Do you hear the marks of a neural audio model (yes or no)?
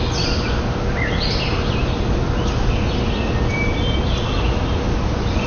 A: no